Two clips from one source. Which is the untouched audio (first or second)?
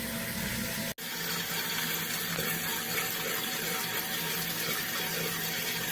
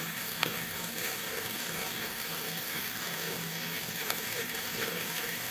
first